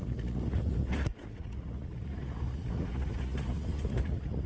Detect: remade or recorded remade